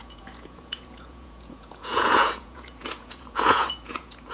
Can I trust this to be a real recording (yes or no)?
no